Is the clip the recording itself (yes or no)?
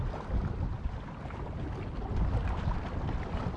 yes